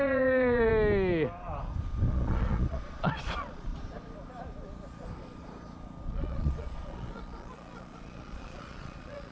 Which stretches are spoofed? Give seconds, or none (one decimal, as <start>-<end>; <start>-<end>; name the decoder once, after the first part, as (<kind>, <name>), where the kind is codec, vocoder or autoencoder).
0.0-0.7 (vocoder, Vocos); 2.1-3.7; 6.1-9.3